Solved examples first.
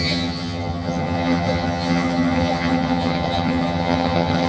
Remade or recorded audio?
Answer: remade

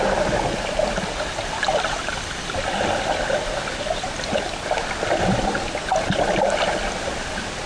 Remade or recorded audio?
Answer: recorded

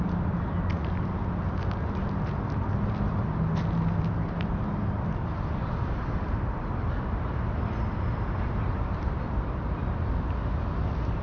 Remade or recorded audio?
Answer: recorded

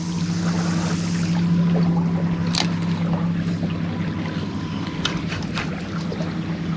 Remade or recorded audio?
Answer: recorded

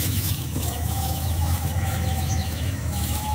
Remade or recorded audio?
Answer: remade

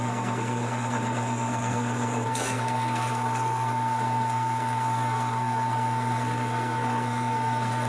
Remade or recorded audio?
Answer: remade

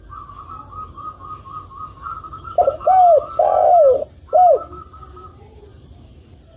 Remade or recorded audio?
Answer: recorded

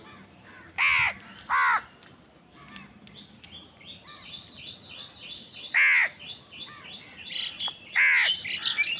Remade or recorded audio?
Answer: recorded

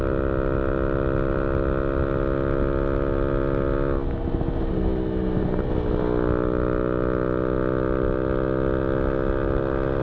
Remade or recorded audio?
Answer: recorded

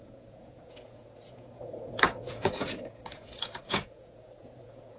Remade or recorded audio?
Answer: remade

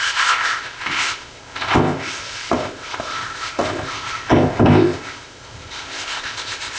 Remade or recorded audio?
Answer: remade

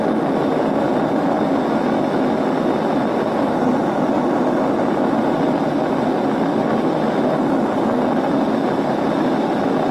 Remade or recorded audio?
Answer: recorded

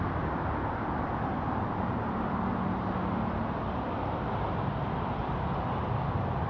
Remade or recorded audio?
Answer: recorded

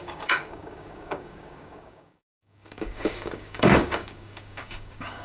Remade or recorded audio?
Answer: remade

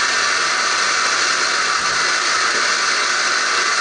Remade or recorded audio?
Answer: recorded